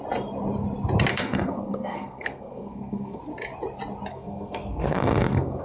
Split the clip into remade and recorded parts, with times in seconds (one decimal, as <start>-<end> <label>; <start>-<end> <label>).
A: 0.0-1.1 recorded; 1.1-3.2 remade; 3.2-4.1 recorded; 4.1-5.6 remade